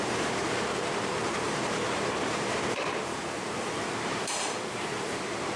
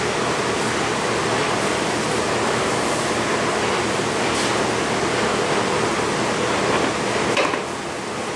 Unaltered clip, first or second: second